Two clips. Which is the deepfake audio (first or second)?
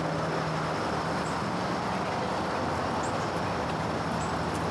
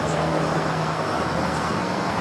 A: second